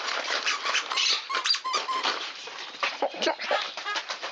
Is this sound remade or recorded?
remade